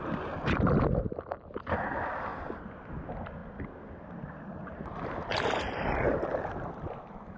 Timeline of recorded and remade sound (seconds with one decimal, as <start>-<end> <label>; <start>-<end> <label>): 0.0-7.4 recorded